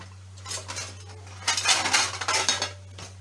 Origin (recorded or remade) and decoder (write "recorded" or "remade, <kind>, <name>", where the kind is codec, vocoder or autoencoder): recorded